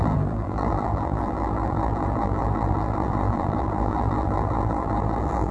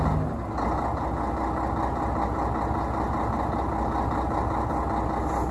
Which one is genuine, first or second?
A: second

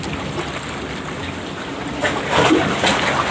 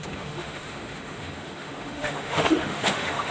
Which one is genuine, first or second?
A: first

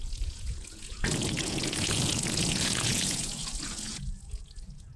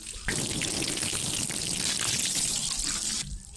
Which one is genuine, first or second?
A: second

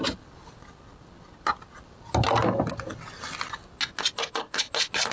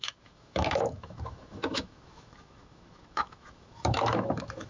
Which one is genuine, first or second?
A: first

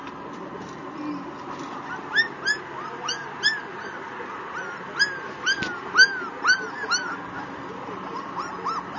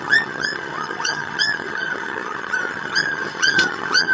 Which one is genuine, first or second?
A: first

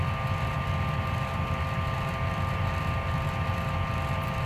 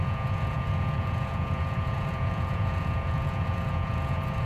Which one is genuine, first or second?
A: first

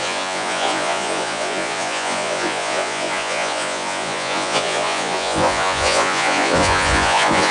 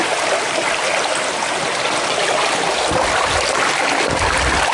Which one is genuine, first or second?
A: second